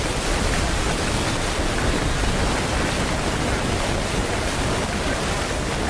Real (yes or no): yes